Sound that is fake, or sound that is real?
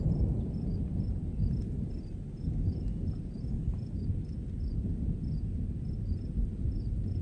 real